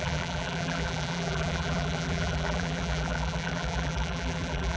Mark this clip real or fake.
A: fake